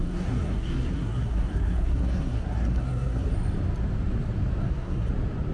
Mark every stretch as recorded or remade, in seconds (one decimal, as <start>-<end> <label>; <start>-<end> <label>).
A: 0.0-3.3 remade; 3.3-4.6 recorded; 4.6-5.1 remade; 5.1-5.5 recorded